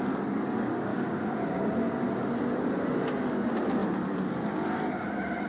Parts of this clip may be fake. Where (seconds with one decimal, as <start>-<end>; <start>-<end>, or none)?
0.9-1.6